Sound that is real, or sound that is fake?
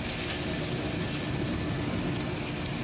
real